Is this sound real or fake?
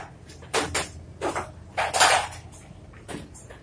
real